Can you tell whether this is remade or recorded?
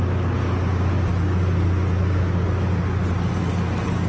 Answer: recorded